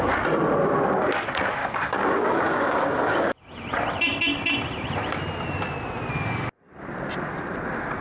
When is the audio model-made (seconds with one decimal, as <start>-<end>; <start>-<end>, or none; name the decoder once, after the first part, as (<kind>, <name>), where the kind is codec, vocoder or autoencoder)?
1.6-3.2 (codec, DAC)